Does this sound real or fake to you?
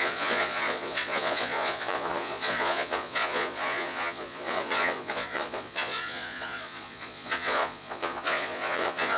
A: fake